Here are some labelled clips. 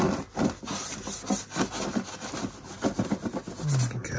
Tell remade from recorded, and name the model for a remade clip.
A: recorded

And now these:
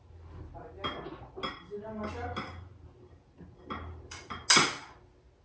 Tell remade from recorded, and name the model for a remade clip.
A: recorded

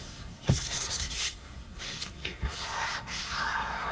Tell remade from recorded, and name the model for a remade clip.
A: remade, codec, SNAC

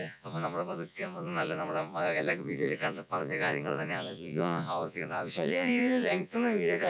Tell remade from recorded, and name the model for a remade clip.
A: remade, vocoder, Vocos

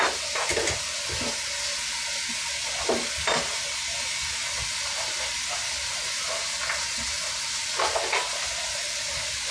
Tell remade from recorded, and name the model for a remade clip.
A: recorded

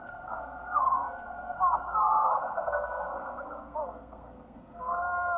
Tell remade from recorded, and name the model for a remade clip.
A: remade, codec, SNAC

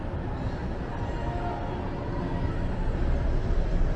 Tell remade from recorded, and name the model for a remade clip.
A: recorded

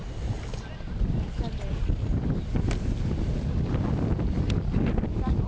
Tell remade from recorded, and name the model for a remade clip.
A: recorded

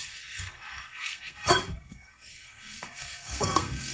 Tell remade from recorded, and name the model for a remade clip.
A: remade, codec, SNAC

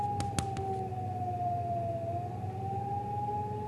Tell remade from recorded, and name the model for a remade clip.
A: recorded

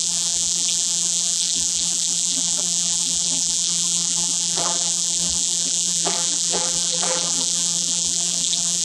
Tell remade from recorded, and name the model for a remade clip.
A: remade, vocoder, BigVGAN v2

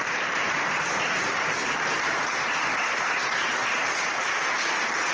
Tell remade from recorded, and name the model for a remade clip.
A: remade, vocoder, BigVGAN v2